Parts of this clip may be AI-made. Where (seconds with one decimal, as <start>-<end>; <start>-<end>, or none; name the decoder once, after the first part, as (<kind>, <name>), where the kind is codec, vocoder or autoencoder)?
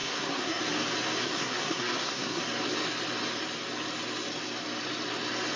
0.0-0.6 (codec, SNAC); 1.2-2.4